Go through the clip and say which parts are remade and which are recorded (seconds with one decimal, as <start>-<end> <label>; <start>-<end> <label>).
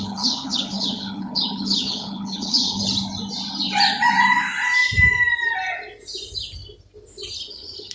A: 0.0-2.8 remade; 2.8-7.5 recorded; 7.5-7.9 remade